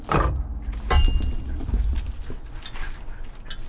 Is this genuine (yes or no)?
yes